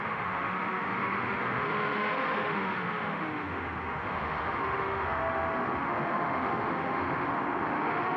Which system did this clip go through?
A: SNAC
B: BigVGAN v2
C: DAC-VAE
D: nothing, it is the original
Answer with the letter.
C